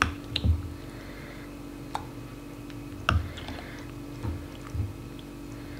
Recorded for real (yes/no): yes